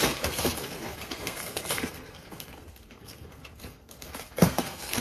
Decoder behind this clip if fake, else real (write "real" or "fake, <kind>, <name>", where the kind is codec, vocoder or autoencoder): fake, codec, SNAC